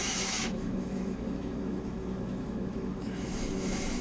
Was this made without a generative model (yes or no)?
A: no